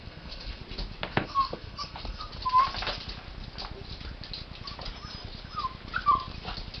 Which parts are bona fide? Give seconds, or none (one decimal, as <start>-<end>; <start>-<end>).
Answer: 0.6-1.1; 2.3-6.8